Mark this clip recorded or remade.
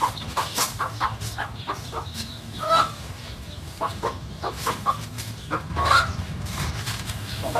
remade